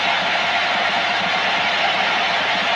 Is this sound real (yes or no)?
yes